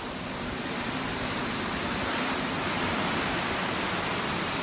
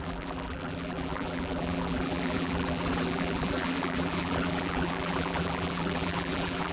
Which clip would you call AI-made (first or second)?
second